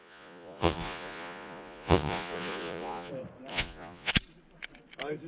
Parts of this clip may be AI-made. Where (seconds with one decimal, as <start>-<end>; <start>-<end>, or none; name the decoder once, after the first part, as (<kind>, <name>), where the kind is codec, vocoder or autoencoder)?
0.0-3.1 (vocoder, Vocos); 3.5-4.1